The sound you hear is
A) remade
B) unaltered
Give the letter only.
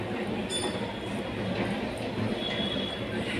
B